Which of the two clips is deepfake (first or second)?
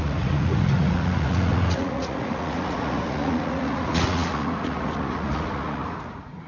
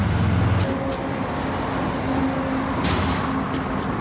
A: first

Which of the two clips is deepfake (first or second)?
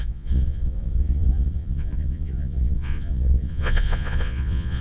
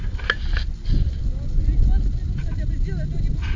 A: first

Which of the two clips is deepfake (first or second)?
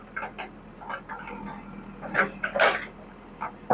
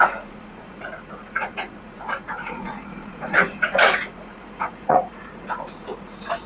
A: second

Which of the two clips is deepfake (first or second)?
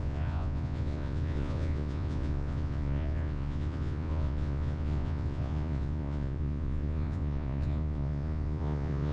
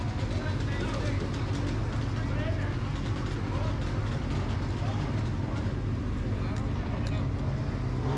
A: first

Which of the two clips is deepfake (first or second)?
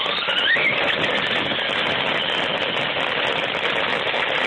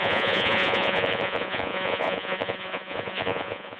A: second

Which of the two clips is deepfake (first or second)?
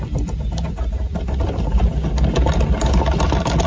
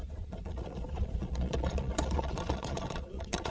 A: second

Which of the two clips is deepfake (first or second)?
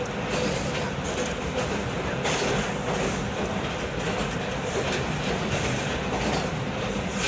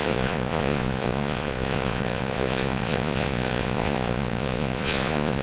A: second